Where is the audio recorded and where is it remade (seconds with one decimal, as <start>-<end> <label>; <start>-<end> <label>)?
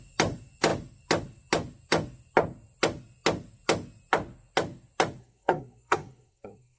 0.0-5.2 recorded; 5.2-6.8 remade